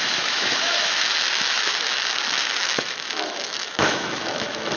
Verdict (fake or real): fake